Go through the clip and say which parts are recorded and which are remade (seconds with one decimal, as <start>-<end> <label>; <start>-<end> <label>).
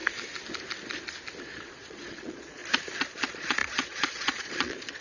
0.0-1.4 recorded; 1.4-2.6 remade; 2.6-3.2 recorded; 3.2-5.0 remade